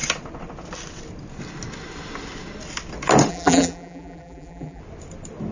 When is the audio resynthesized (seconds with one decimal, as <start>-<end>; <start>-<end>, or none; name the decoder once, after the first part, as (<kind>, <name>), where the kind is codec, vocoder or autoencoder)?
3.3-4.8 (vocoder, BigVGAN v2)